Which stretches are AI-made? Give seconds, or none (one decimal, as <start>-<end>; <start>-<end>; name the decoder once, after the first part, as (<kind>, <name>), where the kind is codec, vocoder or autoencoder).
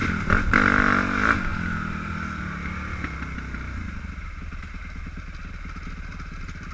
none